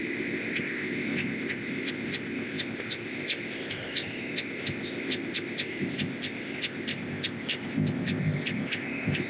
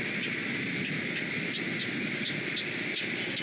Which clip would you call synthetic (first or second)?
first